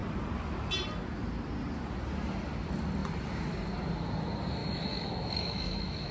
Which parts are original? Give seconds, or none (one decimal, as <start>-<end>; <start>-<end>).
0.0-4.6

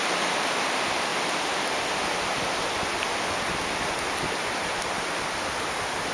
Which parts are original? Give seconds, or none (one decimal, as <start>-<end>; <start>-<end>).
0.0-6.1